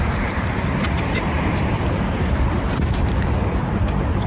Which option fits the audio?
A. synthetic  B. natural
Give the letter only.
A